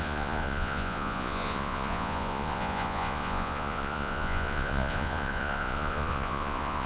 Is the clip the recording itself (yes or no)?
no